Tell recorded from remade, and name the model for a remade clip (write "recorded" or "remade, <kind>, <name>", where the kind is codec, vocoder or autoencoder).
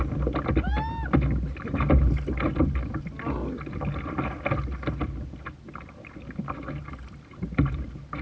recorded